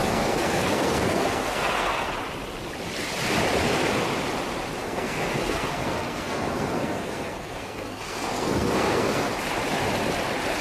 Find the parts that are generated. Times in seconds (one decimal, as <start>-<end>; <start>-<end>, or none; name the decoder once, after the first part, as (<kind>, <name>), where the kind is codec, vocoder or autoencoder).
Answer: 0.0-2.1 (codec, SNAC); 4.8-9.3